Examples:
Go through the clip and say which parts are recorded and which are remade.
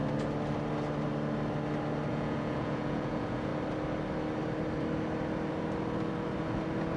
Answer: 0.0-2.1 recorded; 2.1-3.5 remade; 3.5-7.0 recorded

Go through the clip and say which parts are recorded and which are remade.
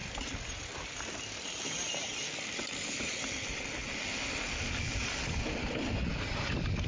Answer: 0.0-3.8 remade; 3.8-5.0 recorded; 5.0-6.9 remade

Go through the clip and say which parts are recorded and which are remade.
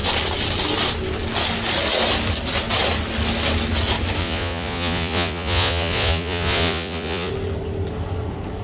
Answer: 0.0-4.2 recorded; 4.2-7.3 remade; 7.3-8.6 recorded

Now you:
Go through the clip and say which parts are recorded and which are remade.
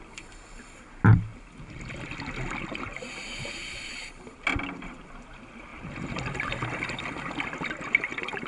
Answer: 0.0-8.5 recorded